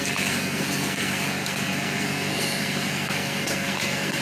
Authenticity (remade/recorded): remade